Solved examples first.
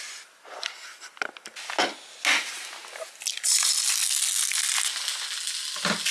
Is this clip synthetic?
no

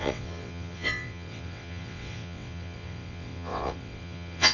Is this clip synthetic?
yes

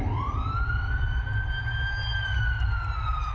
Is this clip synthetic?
yes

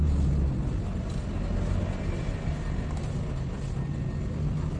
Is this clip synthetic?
no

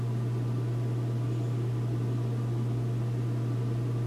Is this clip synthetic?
no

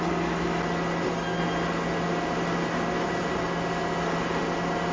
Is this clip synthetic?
no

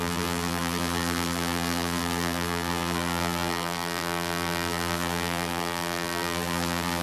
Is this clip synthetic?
yes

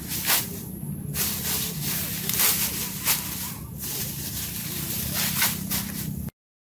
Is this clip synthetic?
no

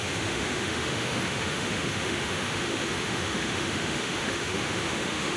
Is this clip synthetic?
yes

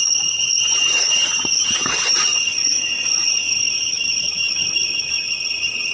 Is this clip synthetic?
yes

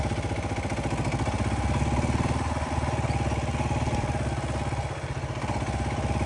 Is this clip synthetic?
no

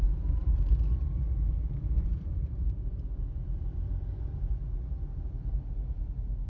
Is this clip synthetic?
yes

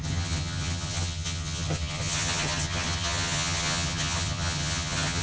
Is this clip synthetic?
yes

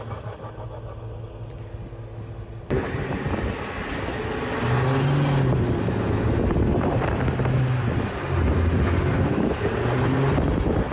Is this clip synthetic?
no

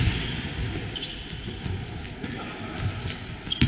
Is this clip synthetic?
no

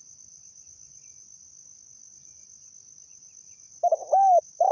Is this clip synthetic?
no